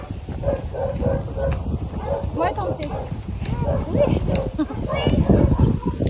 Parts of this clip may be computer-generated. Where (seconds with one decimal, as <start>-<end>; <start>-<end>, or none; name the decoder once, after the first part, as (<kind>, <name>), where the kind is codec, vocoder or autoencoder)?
none